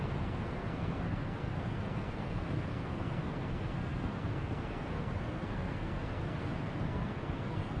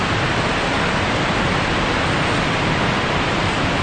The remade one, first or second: first